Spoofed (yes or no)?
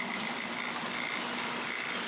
no